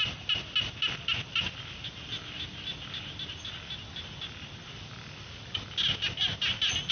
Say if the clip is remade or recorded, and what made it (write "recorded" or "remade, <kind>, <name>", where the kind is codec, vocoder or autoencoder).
recorded